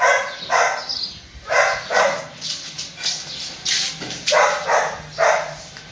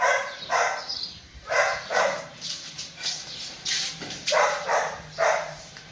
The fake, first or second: second